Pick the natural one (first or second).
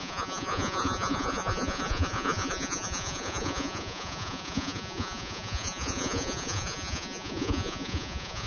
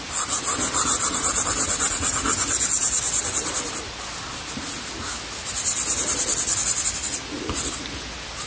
second